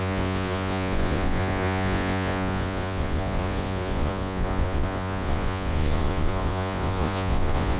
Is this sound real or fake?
fake